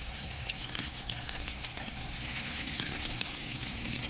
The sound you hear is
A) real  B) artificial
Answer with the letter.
B